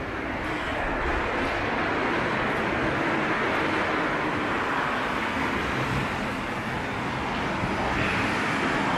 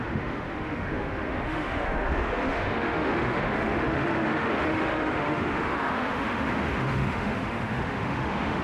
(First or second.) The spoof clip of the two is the second